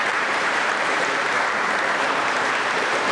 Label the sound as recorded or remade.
remade